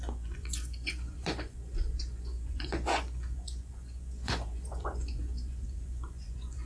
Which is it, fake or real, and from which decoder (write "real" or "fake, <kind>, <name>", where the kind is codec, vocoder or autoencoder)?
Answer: fake, vocoder, Vocos